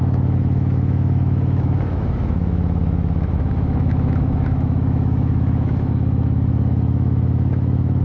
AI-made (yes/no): yes